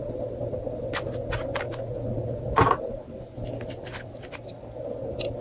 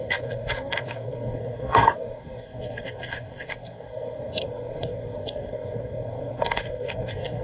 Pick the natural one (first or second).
first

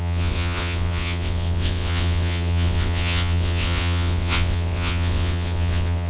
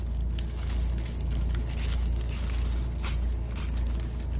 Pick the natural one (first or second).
second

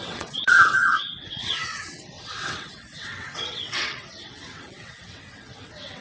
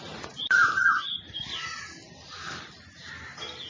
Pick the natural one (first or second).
second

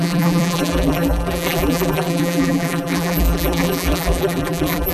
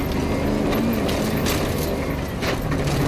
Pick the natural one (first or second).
second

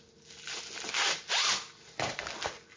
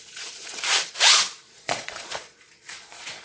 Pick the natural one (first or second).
first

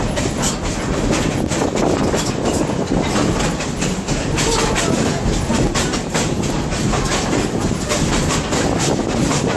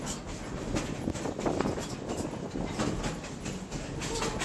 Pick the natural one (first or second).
second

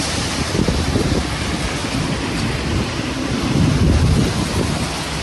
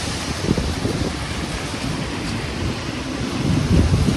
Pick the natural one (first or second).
first